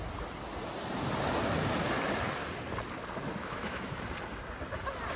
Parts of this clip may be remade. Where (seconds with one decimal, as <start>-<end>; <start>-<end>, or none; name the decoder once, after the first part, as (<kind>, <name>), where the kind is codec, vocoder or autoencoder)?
3.4-4.0 (autoencoder, DAC-VAE)